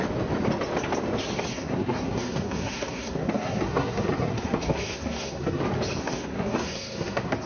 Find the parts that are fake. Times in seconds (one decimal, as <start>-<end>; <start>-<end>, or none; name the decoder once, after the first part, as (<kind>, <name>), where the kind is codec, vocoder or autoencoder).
1.5-5.6 (codec, SNAC); 6.0-7.5

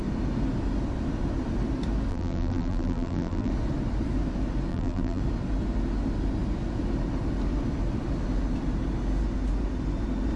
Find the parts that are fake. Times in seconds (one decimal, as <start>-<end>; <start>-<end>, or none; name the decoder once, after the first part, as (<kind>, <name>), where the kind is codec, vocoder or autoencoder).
2.1-3.5 (vocoder, BigVGAN v2); 4.7-5.2

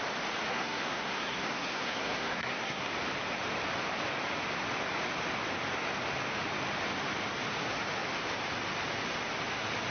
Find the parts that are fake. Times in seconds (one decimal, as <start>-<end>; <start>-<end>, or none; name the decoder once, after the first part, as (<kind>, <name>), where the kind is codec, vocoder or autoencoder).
0.5-2.9 (codec, SNAC)

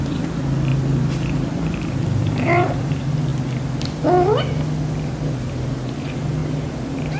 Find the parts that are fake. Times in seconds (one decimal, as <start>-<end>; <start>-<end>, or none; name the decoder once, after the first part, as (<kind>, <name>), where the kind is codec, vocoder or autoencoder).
0.7-2.7 (vocoder, BigVGAN v2); 6.4-7.2